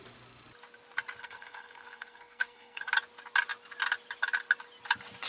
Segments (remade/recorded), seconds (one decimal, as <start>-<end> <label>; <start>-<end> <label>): 0.0-1.2 recorded; 1.2-2.9 remade; 2.9-5.3 recorded